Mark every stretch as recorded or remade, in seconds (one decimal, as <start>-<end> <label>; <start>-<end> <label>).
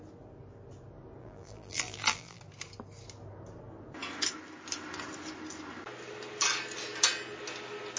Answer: 0.0-1.2 recorded; 1.2-2.4 remade; 2.4-8.0 recorded